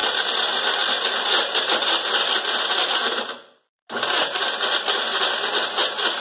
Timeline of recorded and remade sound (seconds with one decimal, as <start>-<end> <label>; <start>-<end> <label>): 0.0-6.2 recorded